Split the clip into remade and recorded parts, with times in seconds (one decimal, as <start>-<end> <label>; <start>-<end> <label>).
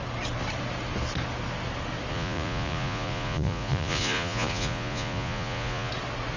0.0-2.1 recorded; 2.1-5.9 remade; 5.9-6.4 recorded